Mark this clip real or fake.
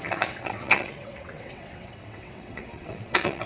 fake